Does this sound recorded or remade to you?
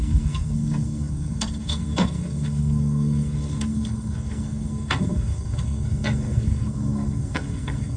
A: remade